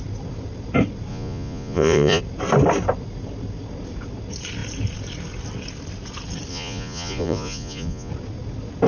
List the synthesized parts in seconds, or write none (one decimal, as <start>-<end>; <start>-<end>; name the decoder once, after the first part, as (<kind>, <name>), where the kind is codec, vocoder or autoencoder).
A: 1.1-2.2 (vocoder, Vocos); 6.5-8.1